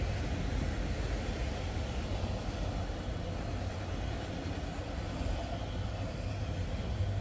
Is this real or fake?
real